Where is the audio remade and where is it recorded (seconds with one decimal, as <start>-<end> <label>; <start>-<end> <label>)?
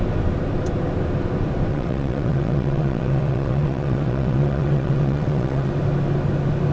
0.0-1.7 recorded; 1.7-5.7 remade; 5.7-6.7 recorded